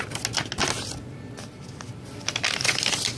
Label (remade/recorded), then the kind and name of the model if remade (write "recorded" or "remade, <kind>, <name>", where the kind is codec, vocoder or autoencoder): recorded